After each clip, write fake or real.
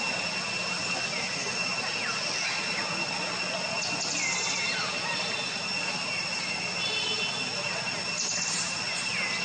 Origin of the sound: real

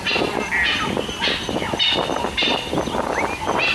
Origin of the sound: real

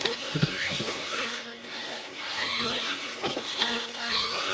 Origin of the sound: fake